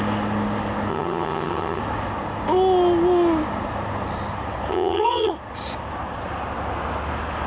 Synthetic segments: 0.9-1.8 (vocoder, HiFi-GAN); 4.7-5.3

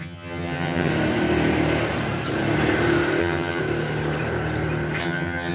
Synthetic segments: 0.0-0.9 (vocoder, HiFi-GAN); 3.2-3.6; 5.0-5.5

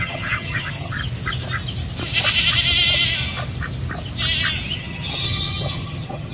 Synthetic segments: 0.0-1.0 (vocoder, HiFi-GAN); 4.8-6.3

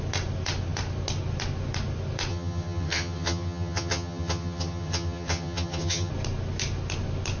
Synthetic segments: 2.3-6.1 (vocoder, HiFi-GAN)

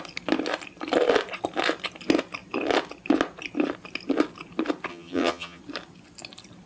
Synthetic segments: 4.9-5.6 (vocoder, HiFi-GAN)

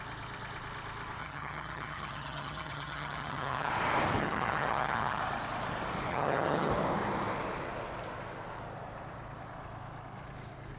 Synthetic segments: 1.2-3.7 (vocoder, HiFi-GAN); 4.2-5.2; 6.1-6.7

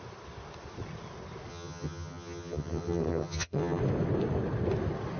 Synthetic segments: 1.5-3.8 (vocoder, HiFi-GAN)

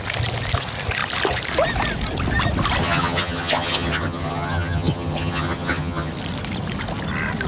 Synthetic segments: 2.8-6.1 (vocoder, HiFi-GAN)